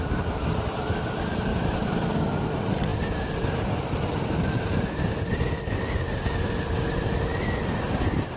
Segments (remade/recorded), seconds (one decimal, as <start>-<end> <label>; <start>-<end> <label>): 0.0-1.5 recorded; 1.5-2.1 remade; 2.1-8.4 recorded